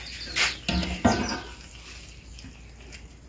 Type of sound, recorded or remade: recorded